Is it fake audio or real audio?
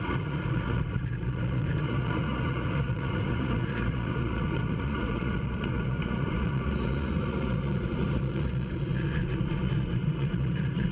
fake